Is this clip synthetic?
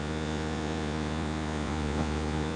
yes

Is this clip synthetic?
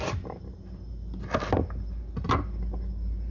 no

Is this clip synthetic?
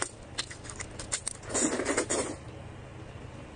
no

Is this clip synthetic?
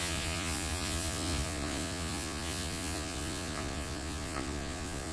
yes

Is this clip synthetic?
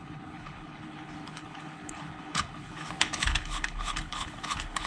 yes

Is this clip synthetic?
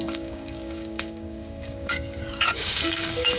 yes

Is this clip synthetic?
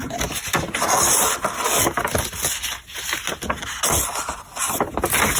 no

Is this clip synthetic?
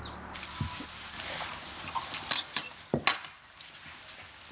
no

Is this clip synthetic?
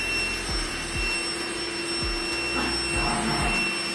no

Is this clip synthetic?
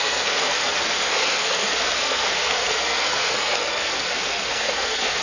yes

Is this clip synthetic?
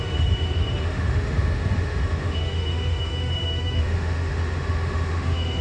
yes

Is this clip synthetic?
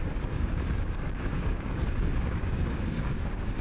yes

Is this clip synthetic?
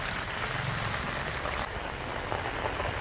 no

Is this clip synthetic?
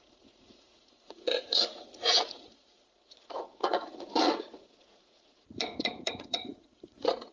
yes